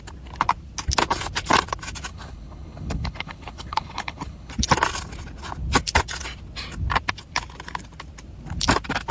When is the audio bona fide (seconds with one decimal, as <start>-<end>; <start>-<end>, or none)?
0.0-2.1; 4.5-9.1